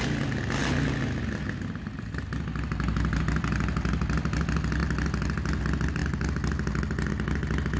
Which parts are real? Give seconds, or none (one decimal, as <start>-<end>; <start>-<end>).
0.0-7.8